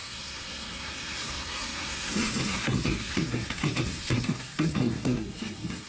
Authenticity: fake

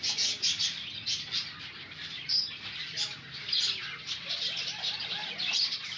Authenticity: real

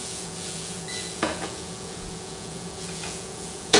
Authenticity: fake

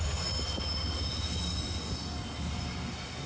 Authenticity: real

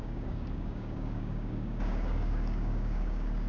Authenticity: fake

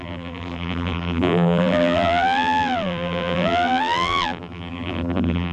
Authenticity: fake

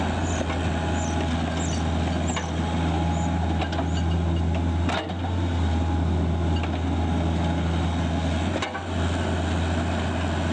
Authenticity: real